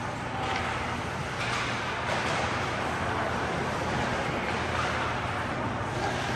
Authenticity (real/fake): fake